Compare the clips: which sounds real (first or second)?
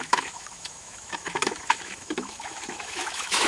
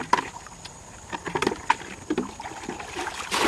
second